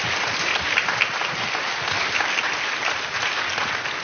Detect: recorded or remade recorded